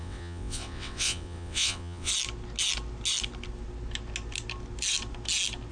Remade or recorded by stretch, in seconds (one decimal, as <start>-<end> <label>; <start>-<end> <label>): 0.0-2.1 remade; 2.1-5.7 recorded